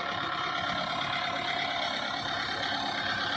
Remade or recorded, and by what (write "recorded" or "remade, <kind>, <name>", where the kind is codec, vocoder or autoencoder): recorded